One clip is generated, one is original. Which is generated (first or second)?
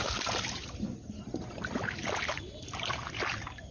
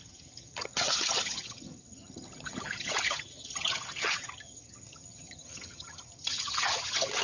second